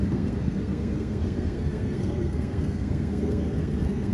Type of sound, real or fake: fake